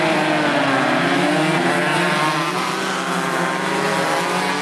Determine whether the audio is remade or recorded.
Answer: recorded